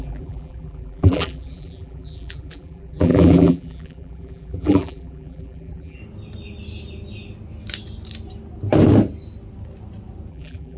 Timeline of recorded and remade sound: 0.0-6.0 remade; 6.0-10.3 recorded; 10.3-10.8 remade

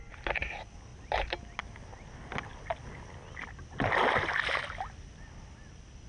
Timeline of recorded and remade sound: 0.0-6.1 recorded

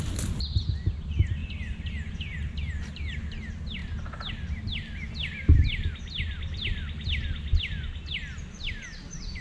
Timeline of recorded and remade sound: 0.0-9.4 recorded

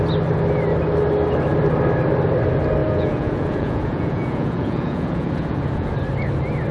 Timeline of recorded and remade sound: 0.0-2.8 recorded; 2.8-5.9 remade; 5.9-6.7 recorded